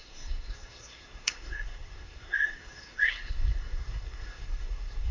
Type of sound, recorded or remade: remade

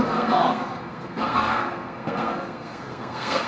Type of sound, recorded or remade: remade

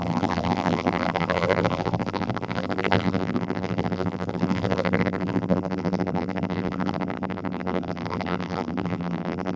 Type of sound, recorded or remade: remade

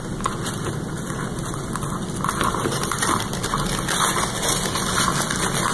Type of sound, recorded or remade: recorded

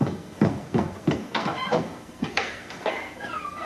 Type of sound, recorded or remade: remade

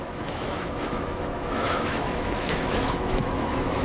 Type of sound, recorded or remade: remade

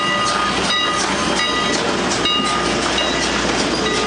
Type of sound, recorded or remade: recorded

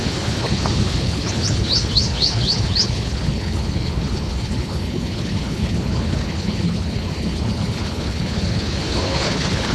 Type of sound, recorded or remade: remade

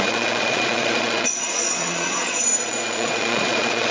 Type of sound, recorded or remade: remade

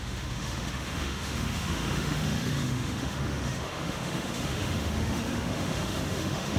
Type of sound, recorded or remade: remade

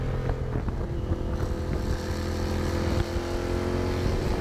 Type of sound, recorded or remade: recorded